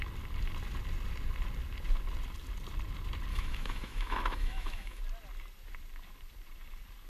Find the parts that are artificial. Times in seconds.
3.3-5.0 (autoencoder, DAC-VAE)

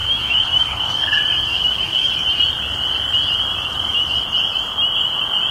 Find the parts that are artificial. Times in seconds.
0.0-1.1 (codec, DAC); 1.5-2.1

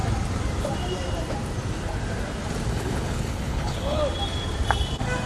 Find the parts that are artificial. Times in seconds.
2.7-4.0 (codec, HILCodec)

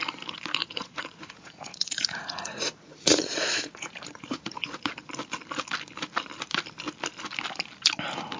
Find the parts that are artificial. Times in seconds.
0.6-4.9 (vocoder, Vocos)

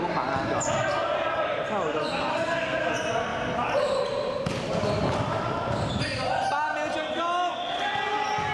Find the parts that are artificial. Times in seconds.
2.3-2.9 (codec, SNAC)

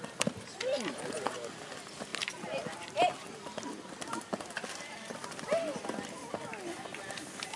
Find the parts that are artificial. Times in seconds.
2.1-3.1 (vocoder, BigVGAN v2)

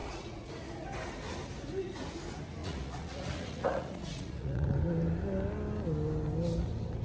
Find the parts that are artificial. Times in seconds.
0.0-0.5 (vocoder, Vocos); 2.6-4.7